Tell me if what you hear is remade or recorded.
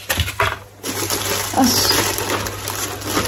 recorded